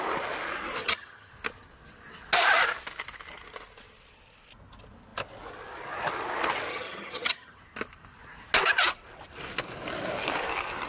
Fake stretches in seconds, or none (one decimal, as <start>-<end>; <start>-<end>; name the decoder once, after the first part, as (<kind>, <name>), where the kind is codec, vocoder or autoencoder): 0.8-1.3 (vocoder, HiFi-GAN); 6.7-7.6